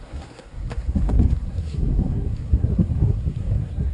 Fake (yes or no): yes